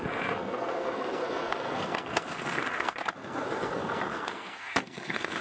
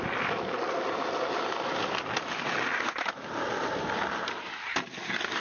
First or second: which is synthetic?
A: first